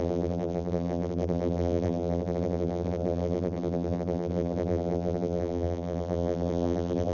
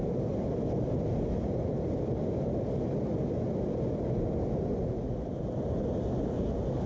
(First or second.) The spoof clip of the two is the first